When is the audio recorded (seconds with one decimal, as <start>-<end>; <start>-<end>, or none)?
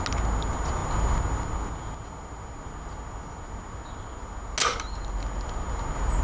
0.0-6.2